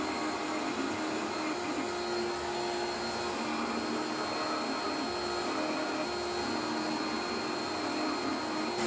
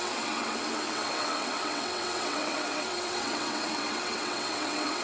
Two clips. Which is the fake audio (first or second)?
second